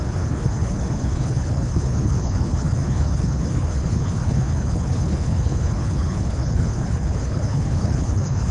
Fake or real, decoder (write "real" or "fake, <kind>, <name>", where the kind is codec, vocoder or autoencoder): fake, codec, HILCodec